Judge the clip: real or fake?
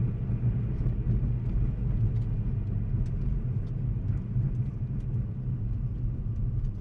real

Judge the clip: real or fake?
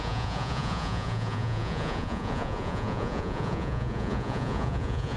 fake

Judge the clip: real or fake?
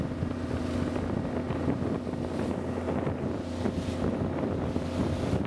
real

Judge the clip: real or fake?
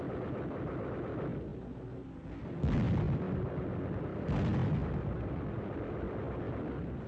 real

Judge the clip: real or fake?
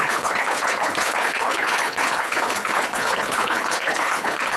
fake